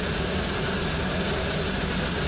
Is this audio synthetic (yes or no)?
no